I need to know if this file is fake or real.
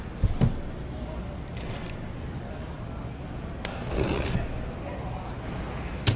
real